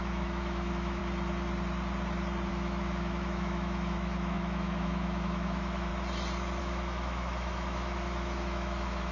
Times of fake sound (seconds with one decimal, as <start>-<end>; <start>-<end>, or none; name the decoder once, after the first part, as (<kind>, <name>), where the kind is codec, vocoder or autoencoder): 0.0-1.0 (autoencoder, DAC-VAE); 2.5-5.9; 6.6-9.1